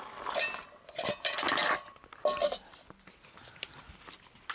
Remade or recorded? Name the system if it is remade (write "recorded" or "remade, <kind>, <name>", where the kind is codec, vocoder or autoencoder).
recorded